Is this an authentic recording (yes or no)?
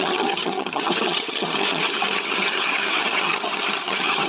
no